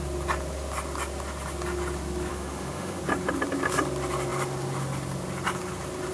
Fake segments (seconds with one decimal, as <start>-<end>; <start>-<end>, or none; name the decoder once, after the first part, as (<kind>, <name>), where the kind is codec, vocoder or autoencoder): 2.3-3.0 (autoencoder, DAC-VAE)